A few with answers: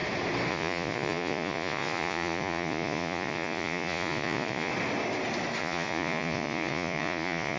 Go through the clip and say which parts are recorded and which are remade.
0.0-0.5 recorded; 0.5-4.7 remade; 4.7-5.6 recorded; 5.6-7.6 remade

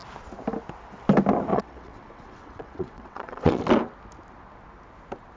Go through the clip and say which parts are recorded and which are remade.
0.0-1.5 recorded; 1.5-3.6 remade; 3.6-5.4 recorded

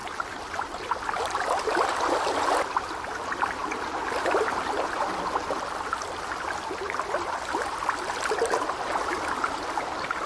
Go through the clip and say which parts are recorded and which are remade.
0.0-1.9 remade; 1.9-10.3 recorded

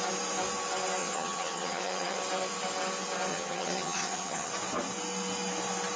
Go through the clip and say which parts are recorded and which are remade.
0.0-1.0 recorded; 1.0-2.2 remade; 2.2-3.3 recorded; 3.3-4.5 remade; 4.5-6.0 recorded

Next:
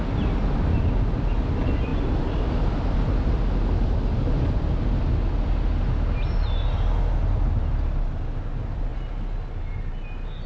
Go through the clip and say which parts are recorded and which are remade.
0.0-10.5 recorded

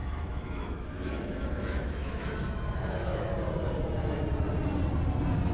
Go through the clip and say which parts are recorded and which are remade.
0.0-3.3 remade; 3.3-5.5 recorded

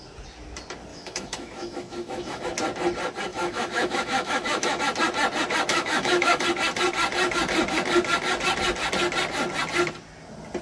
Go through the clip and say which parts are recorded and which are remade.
0.0-0.9 recorded; 0.9-2.4 remade; 2.4-3.3 recorded; 3.3-4.8 remade; 4.8-5.7 recorded; 5.7-6.4 remade; 6.4-10.6 recorded

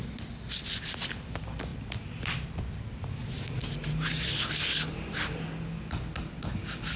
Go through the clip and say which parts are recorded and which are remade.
0.0-7.0 recorded